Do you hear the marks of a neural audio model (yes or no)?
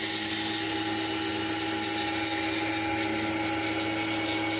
no